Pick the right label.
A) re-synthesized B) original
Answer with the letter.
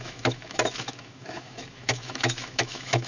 A